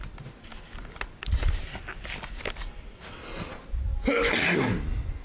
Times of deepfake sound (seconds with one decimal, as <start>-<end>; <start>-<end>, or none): none